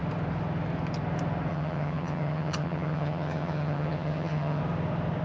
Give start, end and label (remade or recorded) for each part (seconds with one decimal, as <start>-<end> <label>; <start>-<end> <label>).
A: 0.0-1.5 recorded; 1.5-4.6 remade; 4.6-5.2 recorded